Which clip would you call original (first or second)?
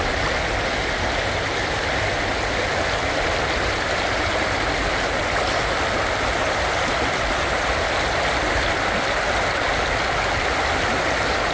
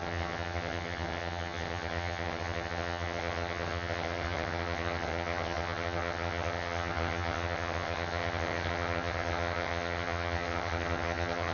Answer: first